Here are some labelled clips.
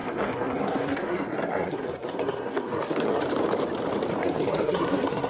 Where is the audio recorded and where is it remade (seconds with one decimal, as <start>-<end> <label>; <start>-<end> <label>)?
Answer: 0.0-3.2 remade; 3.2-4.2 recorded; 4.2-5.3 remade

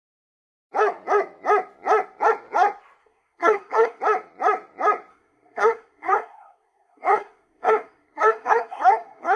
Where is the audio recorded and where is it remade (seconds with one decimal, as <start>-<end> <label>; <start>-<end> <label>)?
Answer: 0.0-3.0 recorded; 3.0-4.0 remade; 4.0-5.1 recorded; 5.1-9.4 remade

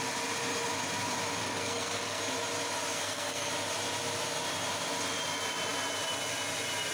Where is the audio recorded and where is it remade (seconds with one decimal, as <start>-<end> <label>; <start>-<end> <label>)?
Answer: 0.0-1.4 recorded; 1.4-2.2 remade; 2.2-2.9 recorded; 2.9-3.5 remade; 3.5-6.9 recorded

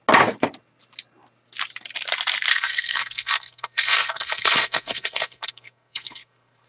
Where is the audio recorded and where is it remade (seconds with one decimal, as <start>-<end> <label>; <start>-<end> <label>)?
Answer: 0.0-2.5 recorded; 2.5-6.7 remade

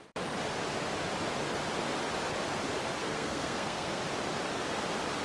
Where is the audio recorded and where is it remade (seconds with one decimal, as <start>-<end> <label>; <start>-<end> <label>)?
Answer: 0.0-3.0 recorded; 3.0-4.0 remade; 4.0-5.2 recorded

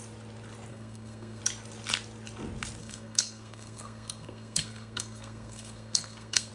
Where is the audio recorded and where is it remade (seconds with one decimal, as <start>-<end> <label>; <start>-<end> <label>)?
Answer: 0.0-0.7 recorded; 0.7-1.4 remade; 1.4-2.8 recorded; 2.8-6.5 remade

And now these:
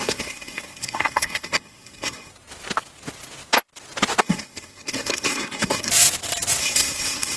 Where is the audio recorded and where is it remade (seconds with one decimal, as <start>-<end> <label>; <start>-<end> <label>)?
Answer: 0.0-2.3 remade; 2.3-4.2 recorded; 4.2-5.9 remade; 5.9-6.6 recorded; 6.6-7.4 remade